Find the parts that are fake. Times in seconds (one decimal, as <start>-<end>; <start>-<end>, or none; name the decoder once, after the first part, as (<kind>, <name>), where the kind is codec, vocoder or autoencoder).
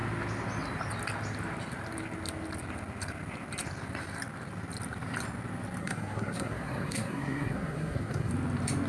5.8-8.3 (codec, SNAC)